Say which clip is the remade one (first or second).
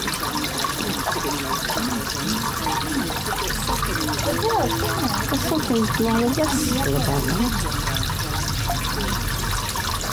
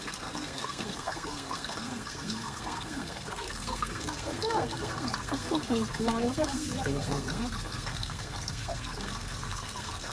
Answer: second